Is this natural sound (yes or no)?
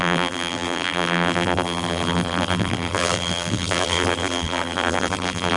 no